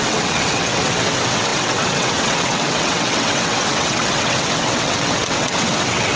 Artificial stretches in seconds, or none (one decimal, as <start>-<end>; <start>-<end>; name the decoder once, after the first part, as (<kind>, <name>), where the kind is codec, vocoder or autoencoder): 0.0-6.2 (vocoder, WaveNeXt)